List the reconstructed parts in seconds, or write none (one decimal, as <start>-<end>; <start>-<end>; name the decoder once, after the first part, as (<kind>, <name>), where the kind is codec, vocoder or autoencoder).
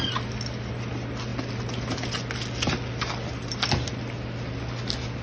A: none